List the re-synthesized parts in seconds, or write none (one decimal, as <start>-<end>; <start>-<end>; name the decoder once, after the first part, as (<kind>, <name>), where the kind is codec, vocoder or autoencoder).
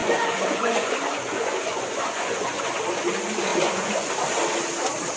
0.0-2.7 (vocoder, Vocos); 3.5-4.1